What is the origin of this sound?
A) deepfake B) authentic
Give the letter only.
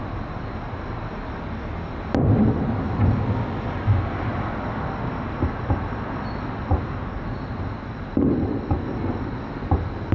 B